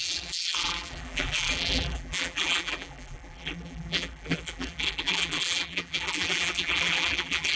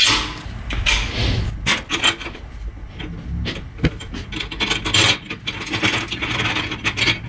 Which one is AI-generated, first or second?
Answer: first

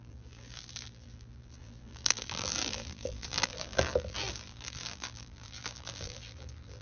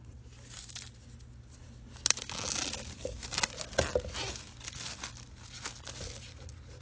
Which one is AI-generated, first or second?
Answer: first